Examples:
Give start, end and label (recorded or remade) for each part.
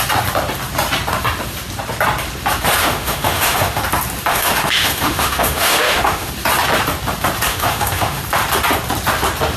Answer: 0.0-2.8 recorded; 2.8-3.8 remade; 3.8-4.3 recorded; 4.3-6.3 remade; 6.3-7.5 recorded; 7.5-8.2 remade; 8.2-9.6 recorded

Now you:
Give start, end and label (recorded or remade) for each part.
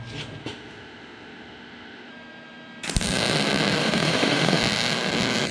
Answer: 0.0-0.4 recorded; 0.4-2.1 remade; 2.1-3.8 recorded; 3.8-4.6 remade; 4.6-5.5 recorded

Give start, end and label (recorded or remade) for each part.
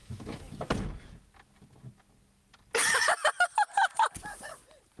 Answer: 0.0-0.7 remade; 0.7-5.0 recorded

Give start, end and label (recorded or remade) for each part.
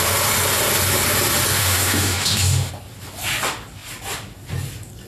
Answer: 0.0-1.6 recorded; 1.6-2.7 remade; 2.7-5.1 recorded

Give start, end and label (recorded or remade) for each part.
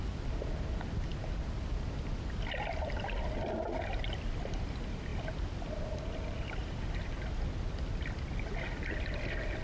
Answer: 0.0-9.6 recorded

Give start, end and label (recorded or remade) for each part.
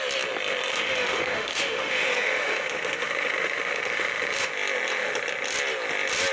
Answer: 0.0-0.7 recorded; 0.7-4.5 remade; 4.5-6.3 recorded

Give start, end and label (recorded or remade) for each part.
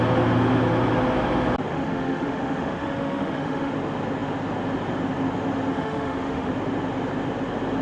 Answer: 0.0-1.7 recorded; 1.7-3.7 remade; 3.7-5.7 recorded; 5.7-6.5 remade; 6.5-7.8 recorded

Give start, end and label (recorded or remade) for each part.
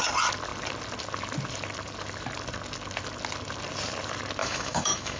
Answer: 0.0-4.4 recorded; 4.4-5.2 remade